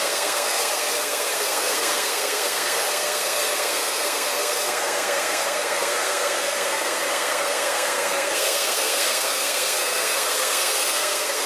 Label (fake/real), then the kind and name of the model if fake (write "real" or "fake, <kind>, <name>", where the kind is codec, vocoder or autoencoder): fake, codec, SNAC